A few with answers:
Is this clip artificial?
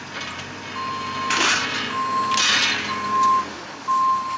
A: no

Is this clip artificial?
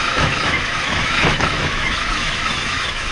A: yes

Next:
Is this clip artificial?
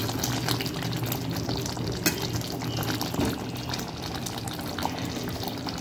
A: no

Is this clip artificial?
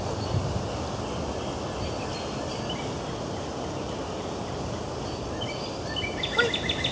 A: no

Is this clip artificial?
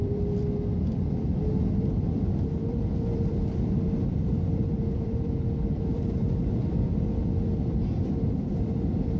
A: yes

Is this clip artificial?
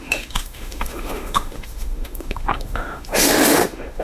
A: yes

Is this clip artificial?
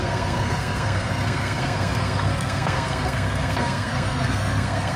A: yes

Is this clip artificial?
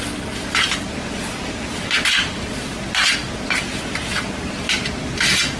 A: no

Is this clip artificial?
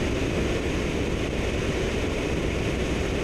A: no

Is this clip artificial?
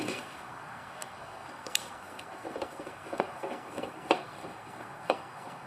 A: yes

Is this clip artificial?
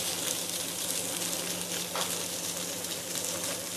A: no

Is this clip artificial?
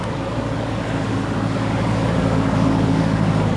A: yes